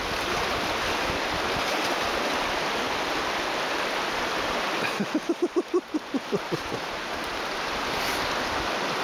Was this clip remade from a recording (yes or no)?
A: no